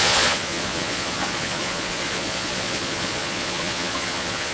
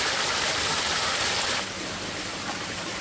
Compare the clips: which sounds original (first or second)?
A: second